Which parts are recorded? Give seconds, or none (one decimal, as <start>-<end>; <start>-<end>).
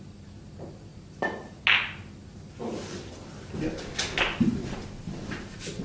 0.0-5.8